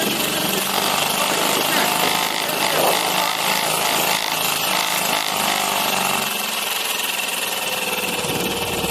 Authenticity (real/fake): real